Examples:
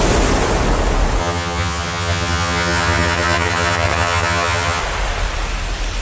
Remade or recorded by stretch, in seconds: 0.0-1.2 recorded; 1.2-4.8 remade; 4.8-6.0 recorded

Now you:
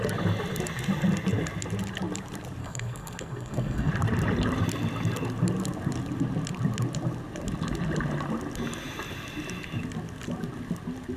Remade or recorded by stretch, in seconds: 0.0-2.6 recorded; 2.6-3.9 remade; 3.9-11.2 recorded

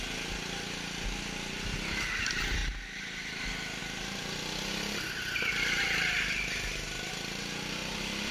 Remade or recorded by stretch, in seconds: 0.0-2.6 recorded; 2.6-3.4 remade; 3.4-7.8 recorded; 7.8-8.3 remade

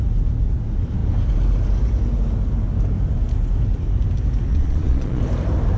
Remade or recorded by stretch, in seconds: 0.0-4.5 recorded; 4.5-5.2 remade; 5.2-5.8 recorded